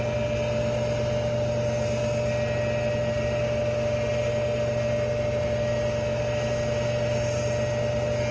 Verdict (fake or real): real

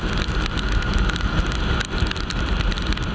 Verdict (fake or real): real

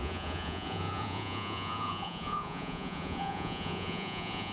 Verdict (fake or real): fake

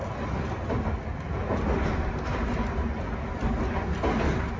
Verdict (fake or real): real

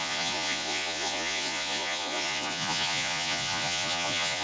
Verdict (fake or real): fake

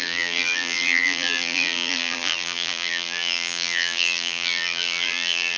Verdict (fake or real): fake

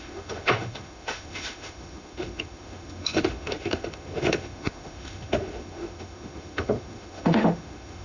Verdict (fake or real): fake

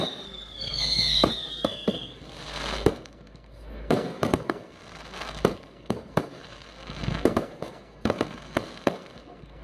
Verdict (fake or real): fake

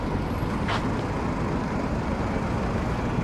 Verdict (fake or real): real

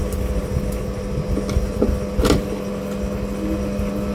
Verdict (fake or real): real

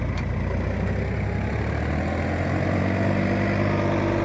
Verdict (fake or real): real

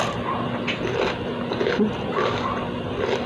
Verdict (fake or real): real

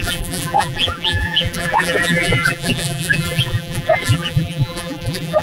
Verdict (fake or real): fake